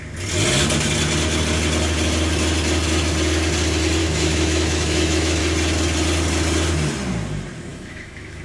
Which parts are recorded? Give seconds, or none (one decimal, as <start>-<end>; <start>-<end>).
0.0-4.0; 5.4-7.7